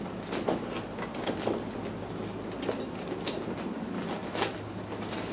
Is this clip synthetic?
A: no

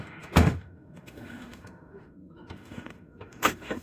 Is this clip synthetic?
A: yes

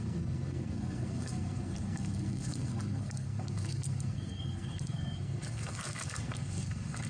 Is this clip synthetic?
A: yes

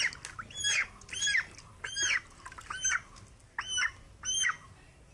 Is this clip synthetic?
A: no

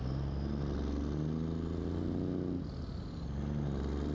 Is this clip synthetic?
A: no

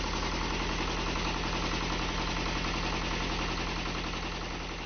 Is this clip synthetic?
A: no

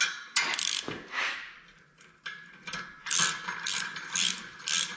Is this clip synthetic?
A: no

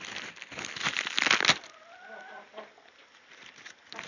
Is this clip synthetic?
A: no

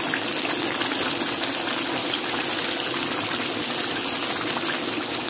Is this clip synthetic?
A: no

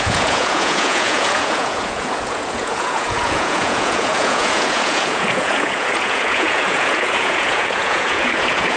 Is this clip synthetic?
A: yes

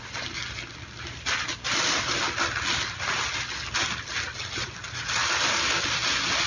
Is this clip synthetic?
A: no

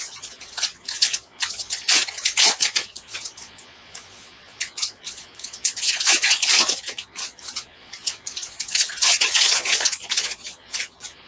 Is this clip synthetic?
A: yes